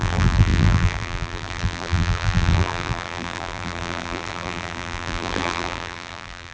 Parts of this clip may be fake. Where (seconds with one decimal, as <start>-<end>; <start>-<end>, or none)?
0.0-6.5